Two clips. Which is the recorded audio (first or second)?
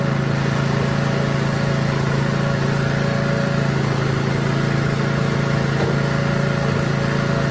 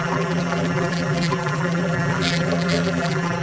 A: first